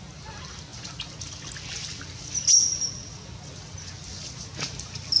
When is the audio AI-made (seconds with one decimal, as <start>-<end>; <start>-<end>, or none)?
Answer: none